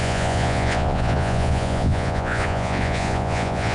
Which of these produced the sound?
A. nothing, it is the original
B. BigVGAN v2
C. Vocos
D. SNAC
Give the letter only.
C